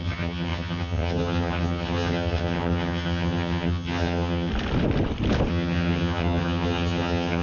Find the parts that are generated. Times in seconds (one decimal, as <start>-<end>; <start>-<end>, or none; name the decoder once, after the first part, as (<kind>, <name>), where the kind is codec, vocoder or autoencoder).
0.0-4.5 (vocoder, HiFi-GAN); 5.5-7.4